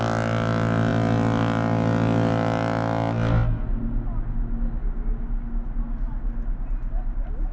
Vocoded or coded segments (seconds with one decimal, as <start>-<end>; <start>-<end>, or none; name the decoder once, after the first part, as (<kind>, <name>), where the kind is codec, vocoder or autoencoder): none